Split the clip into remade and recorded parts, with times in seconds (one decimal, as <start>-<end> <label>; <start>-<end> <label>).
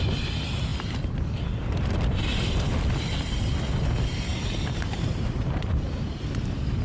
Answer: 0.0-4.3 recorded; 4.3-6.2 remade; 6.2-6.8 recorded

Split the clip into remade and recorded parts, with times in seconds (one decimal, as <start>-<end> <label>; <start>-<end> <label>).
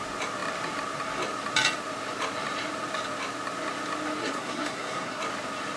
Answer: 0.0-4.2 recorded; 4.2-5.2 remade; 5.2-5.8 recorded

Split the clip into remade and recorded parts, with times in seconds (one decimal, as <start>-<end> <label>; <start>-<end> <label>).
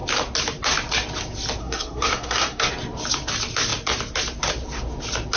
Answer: 0.0-1.6 recorded; 1.6-2.7 remade; 2.7-5.4 recorded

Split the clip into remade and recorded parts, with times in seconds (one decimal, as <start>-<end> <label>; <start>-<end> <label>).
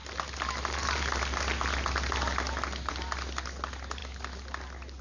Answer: 0.0-5.0 recorded